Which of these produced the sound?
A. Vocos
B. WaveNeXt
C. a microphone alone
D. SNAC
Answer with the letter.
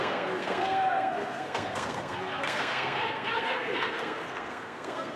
D